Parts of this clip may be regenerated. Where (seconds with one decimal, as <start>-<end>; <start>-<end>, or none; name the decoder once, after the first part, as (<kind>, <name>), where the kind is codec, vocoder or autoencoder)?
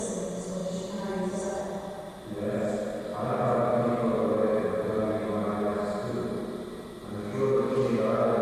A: none